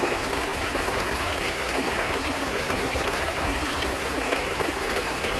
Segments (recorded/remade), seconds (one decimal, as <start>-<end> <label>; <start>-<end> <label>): 0.0-5.4 remade